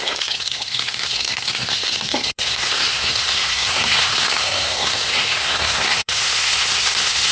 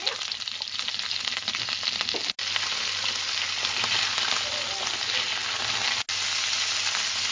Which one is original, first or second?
second